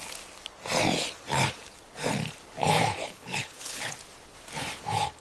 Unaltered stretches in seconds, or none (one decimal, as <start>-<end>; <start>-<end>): 0.0-3.0; 3.9-5.2